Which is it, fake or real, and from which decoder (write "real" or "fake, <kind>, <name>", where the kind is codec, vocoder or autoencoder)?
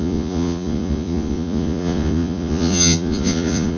fake, vocoder, Vocos